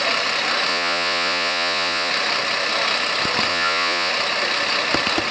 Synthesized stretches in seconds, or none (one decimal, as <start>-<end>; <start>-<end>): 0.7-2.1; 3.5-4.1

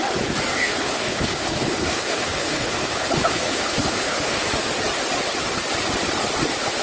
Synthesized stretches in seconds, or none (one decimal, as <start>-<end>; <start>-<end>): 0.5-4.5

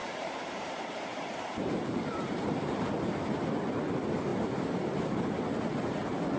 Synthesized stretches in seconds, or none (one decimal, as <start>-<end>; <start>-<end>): 0.0-3.3

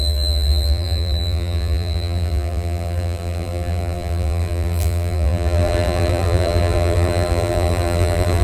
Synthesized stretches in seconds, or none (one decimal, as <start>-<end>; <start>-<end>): 0.0-8.4

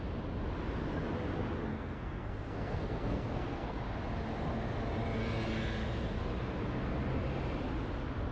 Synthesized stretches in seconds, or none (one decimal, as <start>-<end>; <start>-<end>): 1.7-3.8

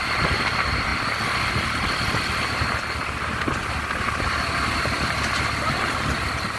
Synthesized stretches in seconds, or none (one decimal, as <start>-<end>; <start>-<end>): none

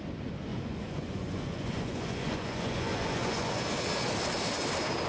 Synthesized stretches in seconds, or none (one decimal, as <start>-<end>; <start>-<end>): 0.5-3.6

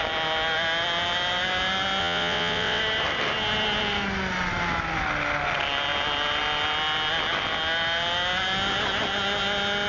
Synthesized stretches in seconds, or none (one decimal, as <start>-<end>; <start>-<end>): 2.0-2.8